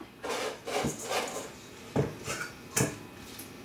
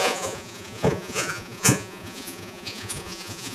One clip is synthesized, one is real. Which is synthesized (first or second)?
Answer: second